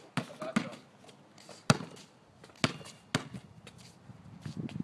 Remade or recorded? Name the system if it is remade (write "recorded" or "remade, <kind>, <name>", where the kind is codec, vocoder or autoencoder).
recorded